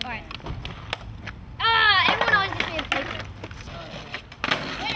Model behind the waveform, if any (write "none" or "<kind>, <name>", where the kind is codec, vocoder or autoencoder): none